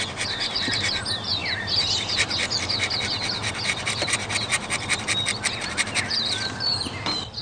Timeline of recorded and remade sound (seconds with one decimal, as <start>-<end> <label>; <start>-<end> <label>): 0.0-7.4 recorded